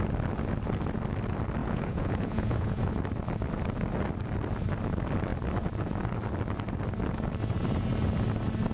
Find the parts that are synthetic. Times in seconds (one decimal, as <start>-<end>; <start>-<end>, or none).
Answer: 1.6-2.9

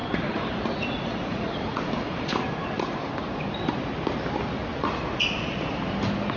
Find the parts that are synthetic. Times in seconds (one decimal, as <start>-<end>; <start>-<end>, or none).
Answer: 0.0-2.3; 4.7-5.7

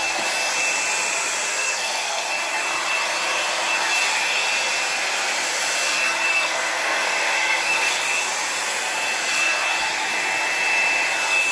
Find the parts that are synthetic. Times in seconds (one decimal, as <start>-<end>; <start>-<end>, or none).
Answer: 1.5-2.2; 6.3-7.9